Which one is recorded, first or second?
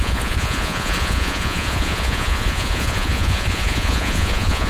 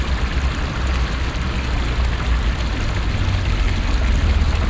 second